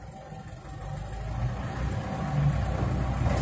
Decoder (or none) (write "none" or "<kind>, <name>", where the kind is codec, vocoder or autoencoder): none